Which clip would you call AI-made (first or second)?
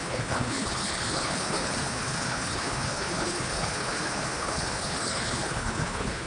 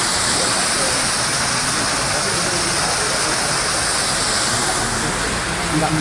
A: first